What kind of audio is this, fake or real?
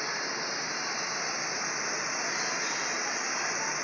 real